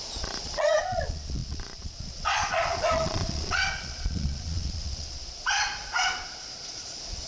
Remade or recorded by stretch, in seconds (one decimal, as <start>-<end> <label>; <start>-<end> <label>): 0.0-7.3 remade